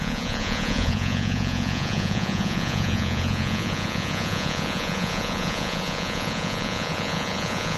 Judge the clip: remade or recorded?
remade